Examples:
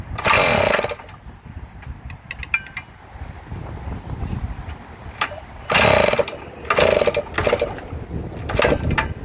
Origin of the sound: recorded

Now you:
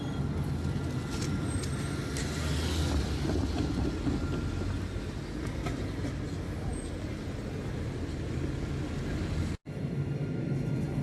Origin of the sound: recorded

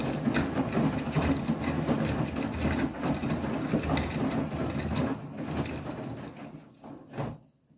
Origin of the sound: recorded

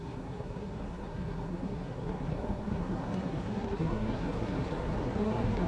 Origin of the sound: remade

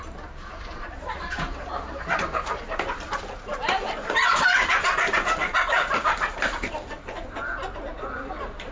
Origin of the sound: remade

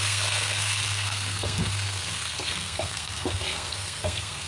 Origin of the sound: remade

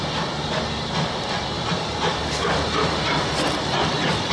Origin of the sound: remade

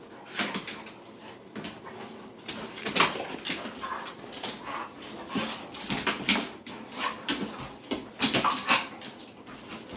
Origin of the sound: recorded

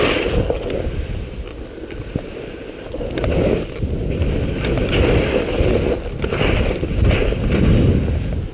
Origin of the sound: recorded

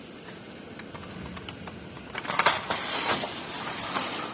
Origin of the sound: recorded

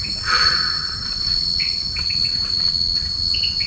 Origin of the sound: remade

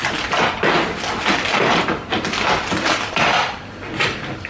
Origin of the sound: recorded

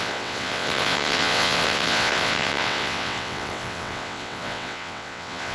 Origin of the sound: remade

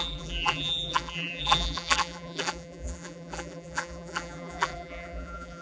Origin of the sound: remade